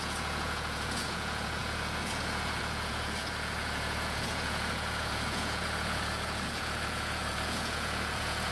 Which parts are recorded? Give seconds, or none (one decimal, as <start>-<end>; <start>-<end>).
none